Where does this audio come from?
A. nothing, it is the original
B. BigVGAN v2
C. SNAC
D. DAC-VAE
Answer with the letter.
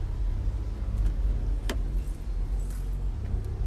A